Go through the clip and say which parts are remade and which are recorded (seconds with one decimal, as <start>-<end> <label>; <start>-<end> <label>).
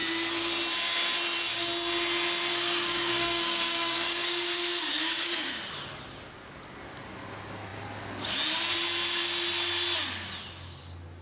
0.0-2.5 recorded; 2.5-5.6 remade; 5.6-11.2 recorded